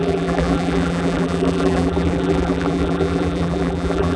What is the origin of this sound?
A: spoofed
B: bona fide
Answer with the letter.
A